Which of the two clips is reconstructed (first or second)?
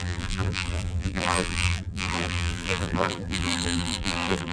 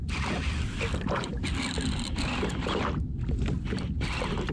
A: first